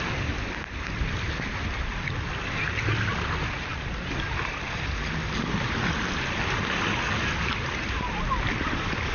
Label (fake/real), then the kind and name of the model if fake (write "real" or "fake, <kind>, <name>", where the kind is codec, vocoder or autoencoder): real